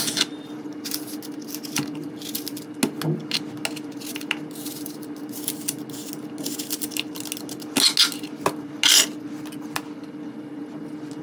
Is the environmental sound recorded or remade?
recorded